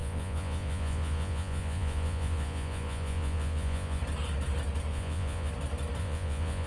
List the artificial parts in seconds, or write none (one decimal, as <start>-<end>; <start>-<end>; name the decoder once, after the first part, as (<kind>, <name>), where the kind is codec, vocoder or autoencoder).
0.0-4.0 (vocoder, Vocos); 4.9-5.5; 6.0-6.7